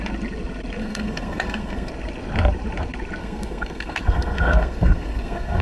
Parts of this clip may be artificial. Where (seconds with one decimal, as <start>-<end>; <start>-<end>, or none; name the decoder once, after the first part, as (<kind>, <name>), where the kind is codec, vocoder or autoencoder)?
0.8-1.9 (codec, SNAC); 3.2-5.6